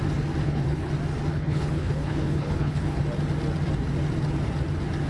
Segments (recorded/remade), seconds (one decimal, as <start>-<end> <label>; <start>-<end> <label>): 0.0-0.4 recorded; 0.4-0.9 remade; 0.9-1.3 recorded; 1.3-3.0 remade; 3.0-5.1 recorded